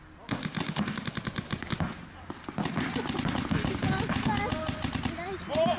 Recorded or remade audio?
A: recorded